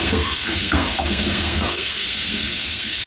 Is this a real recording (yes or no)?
no